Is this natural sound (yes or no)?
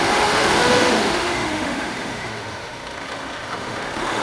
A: no